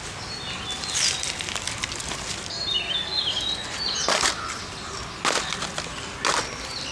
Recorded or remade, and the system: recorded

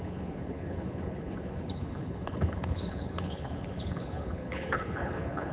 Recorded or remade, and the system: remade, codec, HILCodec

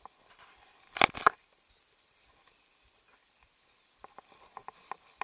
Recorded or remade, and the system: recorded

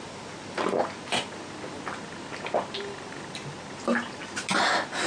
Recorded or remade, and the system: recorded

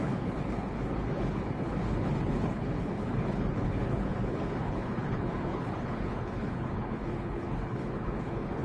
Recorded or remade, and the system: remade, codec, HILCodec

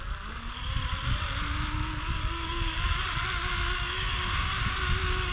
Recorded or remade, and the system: recorded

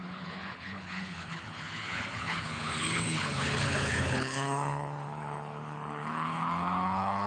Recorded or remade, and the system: remade, codec, HILCodec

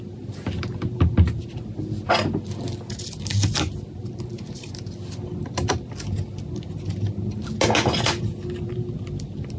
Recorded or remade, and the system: recorded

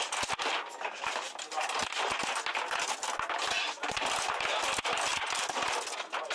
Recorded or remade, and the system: recorded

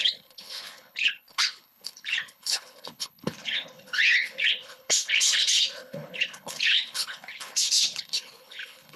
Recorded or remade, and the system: remade, codec, HILCodec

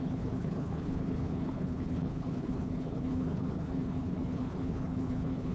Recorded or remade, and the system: remade, codec, HILCodec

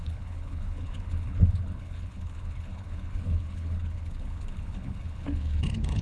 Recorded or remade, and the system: remade, codec, HILCodec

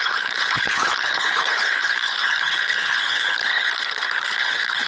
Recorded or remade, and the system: remade, codec, HILCodec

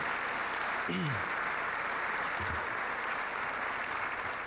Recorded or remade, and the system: recorded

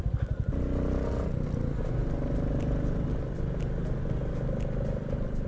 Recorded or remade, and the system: recorded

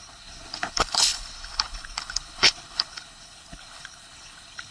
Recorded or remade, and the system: remade, codec, HILCodec